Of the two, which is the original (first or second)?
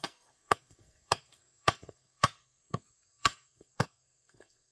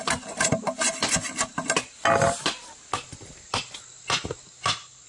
second